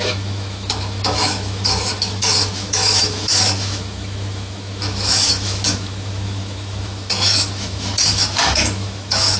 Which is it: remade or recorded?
remade